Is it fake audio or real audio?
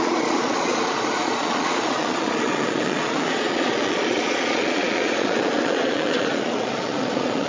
fake